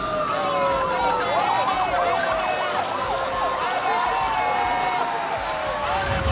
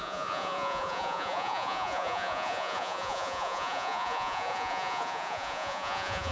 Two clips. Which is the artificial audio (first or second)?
second